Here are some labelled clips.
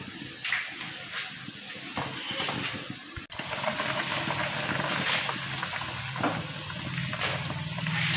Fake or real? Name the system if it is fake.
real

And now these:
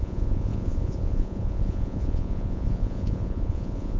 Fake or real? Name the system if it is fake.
fake, vocoder, Vocos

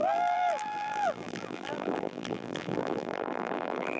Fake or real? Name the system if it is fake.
fake, vocoder, BigVGAN v2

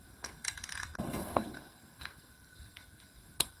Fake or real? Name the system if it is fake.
fake, codec, SNAC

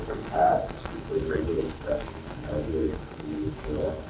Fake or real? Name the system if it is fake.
fake, codec, SNAC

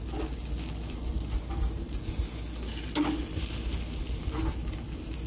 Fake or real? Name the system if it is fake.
real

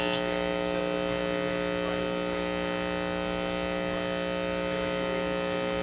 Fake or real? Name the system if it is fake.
real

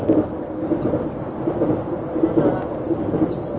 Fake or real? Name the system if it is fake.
real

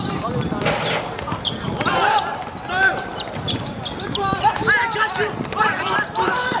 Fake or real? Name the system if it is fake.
fake, vocoder, BigVGAN v2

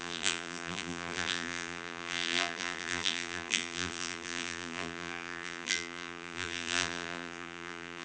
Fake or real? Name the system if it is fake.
fake, vocoder, BigVGAN v2